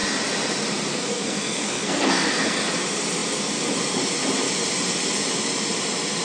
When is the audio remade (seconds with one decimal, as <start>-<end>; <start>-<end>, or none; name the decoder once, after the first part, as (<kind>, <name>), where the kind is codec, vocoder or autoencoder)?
0.9-2.7 (codec, SNAC)